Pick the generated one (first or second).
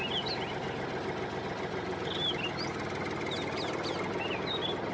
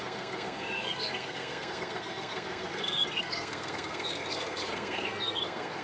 second